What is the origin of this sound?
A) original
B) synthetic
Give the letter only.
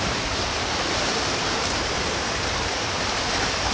B